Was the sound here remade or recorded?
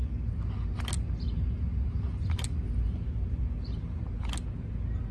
recorded